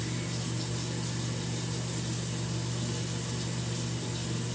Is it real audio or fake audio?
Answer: real